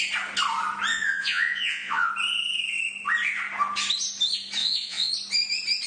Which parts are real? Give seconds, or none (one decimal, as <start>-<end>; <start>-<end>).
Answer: 0.0-0.9; 2.1-4.6; 5.1-5.9